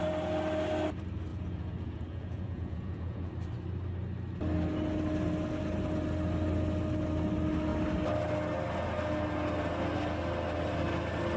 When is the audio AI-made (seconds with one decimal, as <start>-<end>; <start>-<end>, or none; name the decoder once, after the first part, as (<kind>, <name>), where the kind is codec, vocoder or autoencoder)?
1.3-3.3 (vocoder, Vocos)